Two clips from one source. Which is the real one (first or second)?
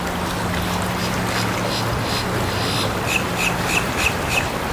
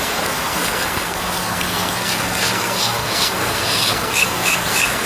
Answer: first